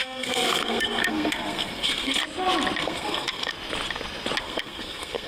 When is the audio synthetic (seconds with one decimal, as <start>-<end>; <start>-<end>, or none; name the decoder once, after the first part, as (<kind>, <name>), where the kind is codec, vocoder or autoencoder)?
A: 0.0-2.2 (codec, SNAC); 2.8-3.5; 4.4-5.3